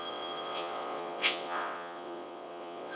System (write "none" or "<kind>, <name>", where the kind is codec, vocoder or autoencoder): vocoder, WaveNeXt